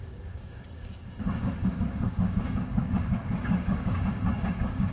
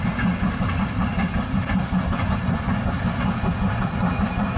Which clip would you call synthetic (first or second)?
first